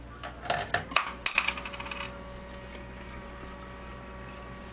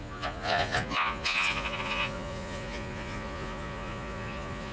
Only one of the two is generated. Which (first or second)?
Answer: second